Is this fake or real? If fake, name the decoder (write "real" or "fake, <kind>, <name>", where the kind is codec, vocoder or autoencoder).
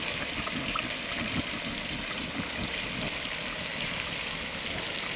real